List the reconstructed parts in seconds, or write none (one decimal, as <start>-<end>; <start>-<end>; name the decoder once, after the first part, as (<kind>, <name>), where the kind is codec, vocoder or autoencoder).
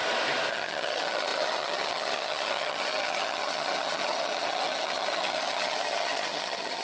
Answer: 0.5-6.8 (vocoder, HiFi-GAN)